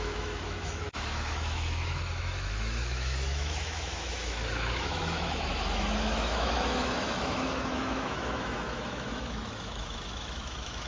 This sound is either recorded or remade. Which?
remade